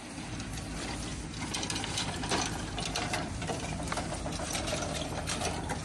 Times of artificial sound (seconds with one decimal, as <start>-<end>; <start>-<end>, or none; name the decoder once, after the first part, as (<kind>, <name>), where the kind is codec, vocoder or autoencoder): 0.0-5.8 (vocoder, BigVGAN v2)

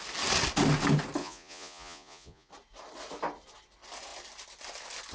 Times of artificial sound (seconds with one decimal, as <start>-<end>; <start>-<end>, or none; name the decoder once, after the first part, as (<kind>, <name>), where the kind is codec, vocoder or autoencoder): 1.2-2.5 (vocoder, Vocos)